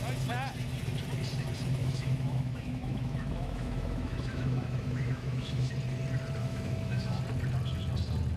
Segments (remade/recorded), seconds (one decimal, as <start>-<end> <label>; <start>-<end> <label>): 0.0-1.8 recorded; 1.8-5.7 remade; 5.7-6.4 recorded; 6.4-7.2 remade; 7.2-8.4 recorded